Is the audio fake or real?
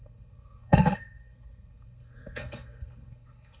fake